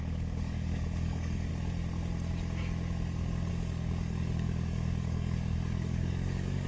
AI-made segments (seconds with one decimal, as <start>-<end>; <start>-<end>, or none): 0.0-1.5; 3.5-6.7